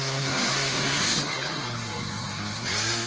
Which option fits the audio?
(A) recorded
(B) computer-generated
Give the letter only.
B